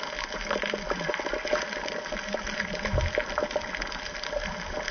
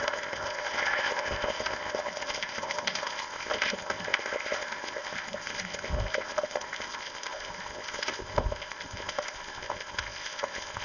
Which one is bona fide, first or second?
first